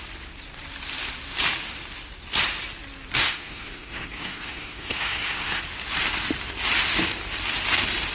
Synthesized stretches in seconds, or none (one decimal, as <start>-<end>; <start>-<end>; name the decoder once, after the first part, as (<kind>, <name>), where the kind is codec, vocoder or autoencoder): 3.2-5.6 (codec, SNAC)